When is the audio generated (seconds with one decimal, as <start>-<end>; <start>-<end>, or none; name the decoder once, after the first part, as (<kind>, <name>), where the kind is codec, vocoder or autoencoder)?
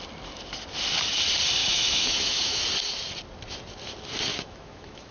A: 1.6-2.6 (autoencoder, DAC-VAE); 4.3-5.1